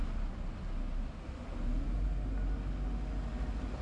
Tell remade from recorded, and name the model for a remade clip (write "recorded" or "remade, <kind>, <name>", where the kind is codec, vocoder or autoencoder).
recorded